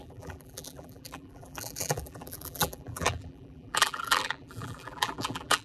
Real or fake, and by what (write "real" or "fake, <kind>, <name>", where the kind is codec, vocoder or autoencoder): fake, vocoder, BigVGAN v2